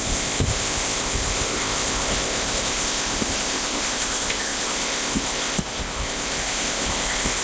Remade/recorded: remade